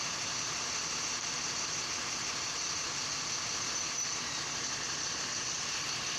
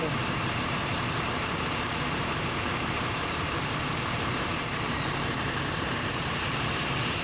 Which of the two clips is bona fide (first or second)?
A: first